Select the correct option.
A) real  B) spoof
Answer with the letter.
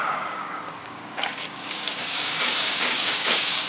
B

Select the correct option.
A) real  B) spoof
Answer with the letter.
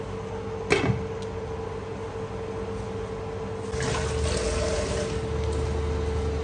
A